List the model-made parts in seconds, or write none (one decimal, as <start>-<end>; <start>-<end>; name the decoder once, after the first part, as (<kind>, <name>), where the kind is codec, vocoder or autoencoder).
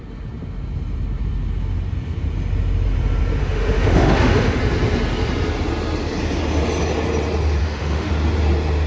3.4-4.6 (autoencoder, DAC-VAE); 7.6-8.1